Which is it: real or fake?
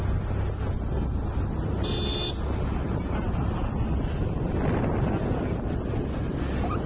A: real